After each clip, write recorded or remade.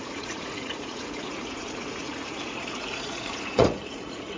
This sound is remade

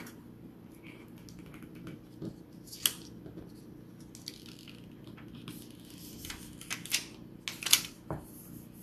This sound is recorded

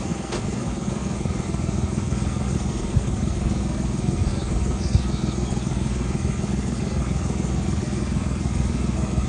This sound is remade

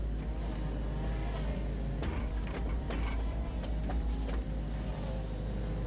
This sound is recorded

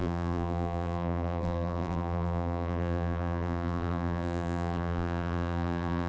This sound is remade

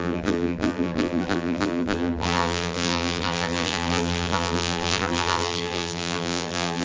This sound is remade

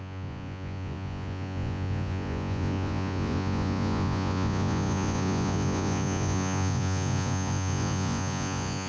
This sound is remade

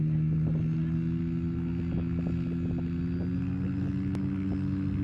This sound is recorded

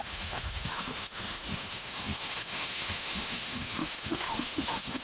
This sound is remade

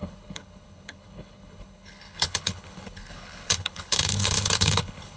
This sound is remade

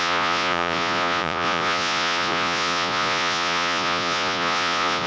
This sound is remade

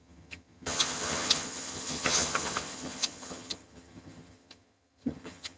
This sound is remade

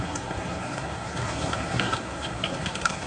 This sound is remade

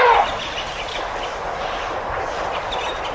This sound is recorded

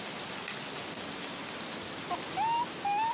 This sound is recorded